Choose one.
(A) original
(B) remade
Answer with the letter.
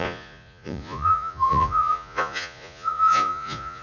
B